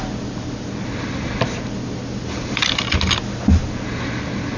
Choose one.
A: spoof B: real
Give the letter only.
B